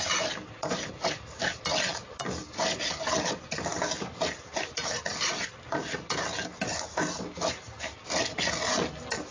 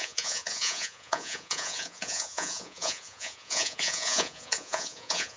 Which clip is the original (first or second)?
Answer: first